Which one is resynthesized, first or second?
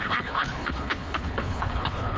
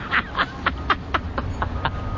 first